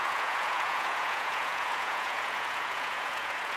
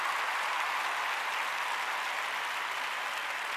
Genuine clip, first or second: second